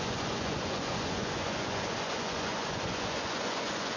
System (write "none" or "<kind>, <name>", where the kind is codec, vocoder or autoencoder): vocoder, Vocos